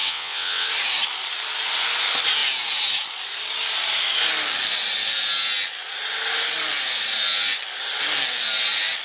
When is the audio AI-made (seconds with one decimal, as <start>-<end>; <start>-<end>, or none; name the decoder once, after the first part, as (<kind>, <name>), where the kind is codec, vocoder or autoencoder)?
0.0-0.7 (vocoder, WaveNeXt)